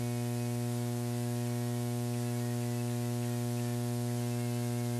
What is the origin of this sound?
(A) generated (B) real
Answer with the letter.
B